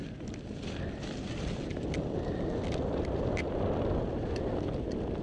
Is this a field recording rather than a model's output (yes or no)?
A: yes